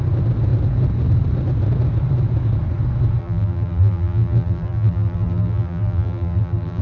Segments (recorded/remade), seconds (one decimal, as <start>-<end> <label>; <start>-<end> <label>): 0.0-3.2 recorded; 3.2-6.8 remade